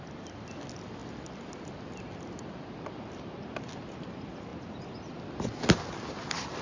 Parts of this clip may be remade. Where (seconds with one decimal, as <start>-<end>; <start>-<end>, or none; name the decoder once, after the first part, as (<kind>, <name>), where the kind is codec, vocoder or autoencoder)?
none